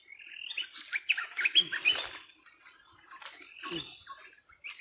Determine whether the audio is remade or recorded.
recorded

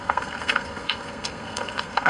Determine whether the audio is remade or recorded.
remade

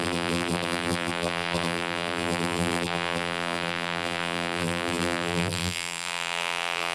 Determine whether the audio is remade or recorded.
remade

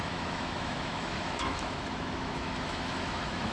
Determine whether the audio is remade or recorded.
remade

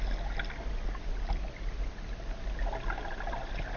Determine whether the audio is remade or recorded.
recorded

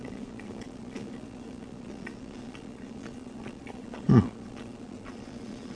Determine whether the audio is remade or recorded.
remade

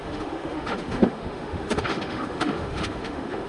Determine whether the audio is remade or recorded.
remade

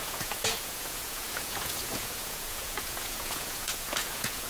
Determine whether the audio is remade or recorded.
remade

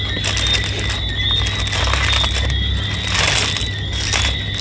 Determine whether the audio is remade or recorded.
recorded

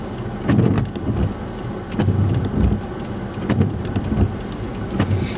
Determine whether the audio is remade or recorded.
recorded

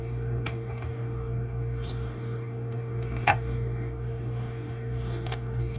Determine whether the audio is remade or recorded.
remade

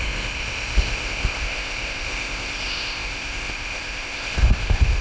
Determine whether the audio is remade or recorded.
remade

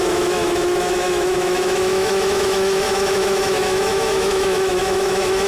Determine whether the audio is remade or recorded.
remade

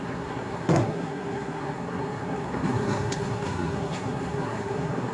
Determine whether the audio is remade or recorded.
remade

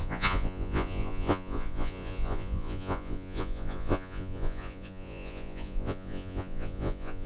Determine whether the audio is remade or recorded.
remade